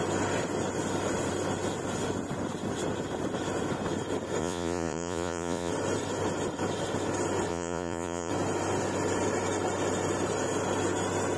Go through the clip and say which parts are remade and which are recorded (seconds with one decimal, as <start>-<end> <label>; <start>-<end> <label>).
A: 0.0-4.4 recorded; 4.4-5.7 remade; 5.7-7.5 recorded; 7.5-8.3 remade; 8.3-11.4 recorded